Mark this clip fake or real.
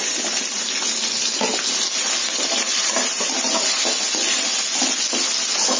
real